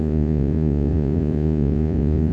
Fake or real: fake